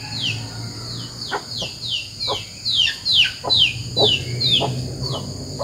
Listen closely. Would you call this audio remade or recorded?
recorded